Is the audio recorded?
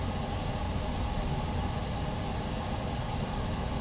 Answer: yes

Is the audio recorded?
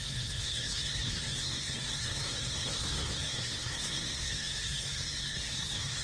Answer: no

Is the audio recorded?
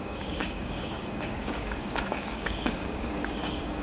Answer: no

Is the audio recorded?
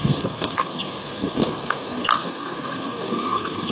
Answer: no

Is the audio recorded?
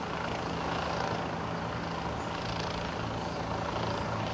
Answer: yes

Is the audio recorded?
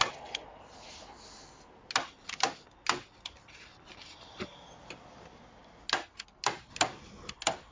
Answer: yes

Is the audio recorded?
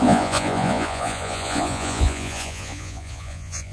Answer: no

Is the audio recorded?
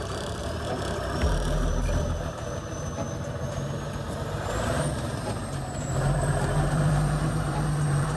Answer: no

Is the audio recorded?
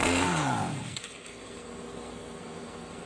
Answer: no